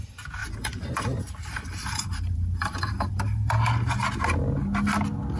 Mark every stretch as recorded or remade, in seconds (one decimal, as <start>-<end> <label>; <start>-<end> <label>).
0.0-0.4 recorded; 0.4-3.6 remade; 3.6-5.4 recorded